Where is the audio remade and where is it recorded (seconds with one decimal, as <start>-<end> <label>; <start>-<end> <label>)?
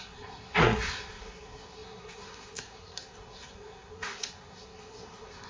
0.0-5.5 remade